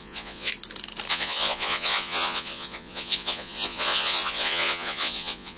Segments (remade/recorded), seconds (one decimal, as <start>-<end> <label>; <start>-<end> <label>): 0.0-0.5 remade; 0.5-1.1 recorded; 1.1-5.6 remade